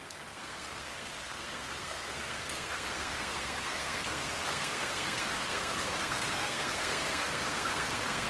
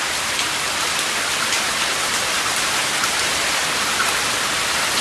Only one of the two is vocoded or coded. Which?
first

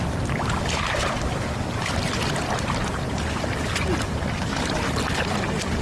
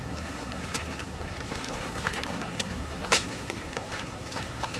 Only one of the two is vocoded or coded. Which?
second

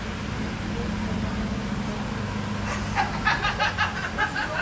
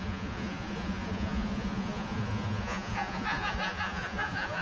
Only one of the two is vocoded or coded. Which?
second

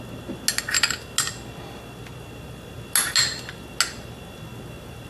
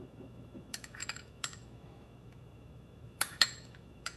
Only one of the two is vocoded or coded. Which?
second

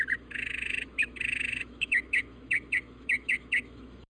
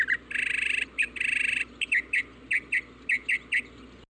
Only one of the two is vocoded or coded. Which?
first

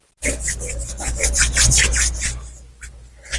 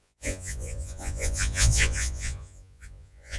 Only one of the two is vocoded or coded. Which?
second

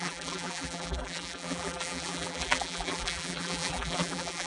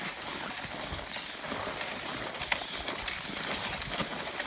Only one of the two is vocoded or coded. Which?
first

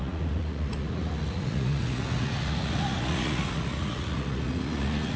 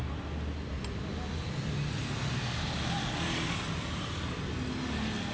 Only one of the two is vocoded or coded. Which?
first